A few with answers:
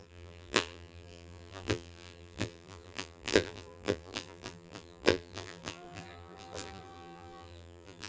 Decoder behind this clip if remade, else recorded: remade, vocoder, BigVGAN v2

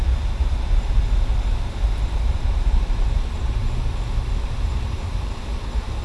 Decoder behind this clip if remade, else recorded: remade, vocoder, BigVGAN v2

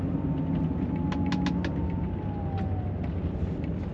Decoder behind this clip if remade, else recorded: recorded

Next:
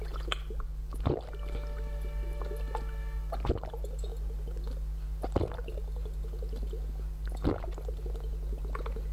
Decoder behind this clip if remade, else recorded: recorded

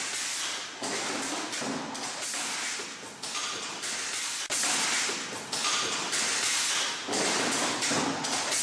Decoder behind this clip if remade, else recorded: recorded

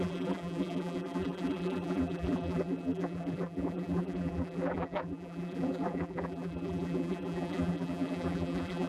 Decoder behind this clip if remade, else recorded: remade, vocoder, BigVGAN v2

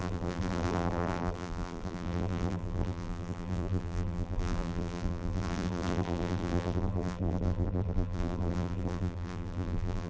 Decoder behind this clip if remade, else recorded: remade, vocoder, BigVGAN v2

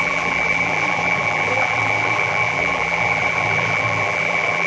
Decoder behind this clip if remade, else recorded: remade, vocoder, BigVGAN v2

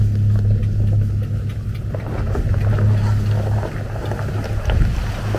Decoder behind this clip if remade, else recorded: recorded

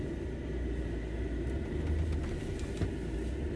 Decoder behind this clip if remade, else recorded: recorded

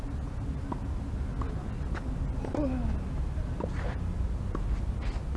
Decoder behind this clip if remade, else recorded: recorded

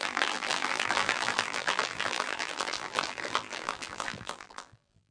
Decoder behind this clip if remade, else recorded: remade, vocoder, BigVGAN v2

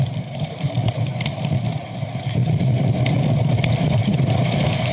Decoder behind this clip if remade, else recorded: remade, vocoder, BigVGAN v2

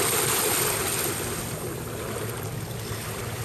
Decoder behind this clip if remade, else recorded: recorded